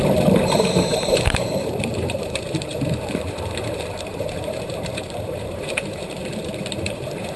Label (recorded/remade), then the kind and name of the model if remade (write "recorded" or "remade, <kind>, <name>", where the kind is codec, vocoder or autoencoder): remade, vocoder, BigVGAN v2